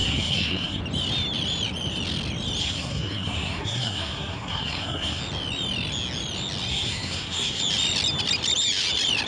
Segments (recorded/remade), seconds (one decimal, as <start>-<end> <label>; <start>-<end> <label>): 0.0-0.8 remade; 0.8-2.6 recorded; 2.6-5.2 remade; 5.2-6.7 recorded; 6.7-7.6 remade; 7.6-9.3 recorded